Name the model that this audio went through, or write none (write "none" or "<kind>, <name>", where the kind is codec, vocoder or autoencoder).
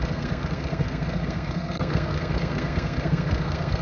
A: codec, SNAC